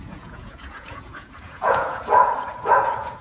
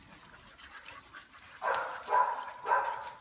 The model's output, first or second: first